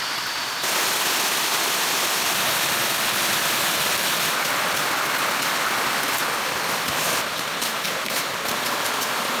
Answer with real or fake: real